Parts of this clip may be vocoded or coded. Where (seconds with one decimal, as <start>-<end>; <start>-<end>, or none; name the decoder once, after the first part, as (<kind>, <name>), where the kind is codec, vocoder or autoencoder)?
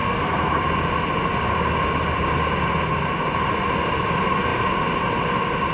0.0-0.6 (codec, SNAC)